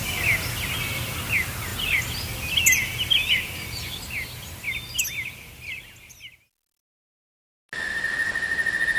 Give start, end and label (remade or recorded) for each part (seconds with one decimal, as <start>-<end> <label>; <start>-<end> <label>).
0.0-9.0 recorded